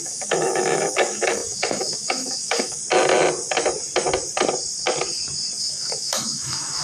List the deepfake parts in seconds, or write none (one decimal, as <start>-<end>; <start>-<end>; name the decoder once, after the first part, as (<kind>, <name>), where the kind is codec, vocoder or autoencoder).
0.0-2.8 (autoencoder, DAC-VAE); 5.6-6.8